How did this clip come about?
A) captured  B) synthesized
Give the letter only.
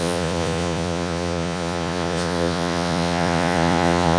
B